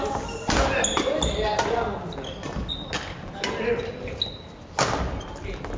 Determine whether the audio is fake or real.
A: real